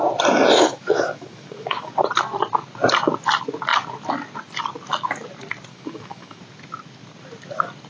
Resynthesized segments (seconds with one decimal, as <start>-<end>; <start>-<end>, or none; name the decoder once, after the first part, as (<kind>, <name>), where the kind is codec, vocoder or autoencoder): 0.7-1.9 (autoencoder, DAC-VAE); 5.7-6.4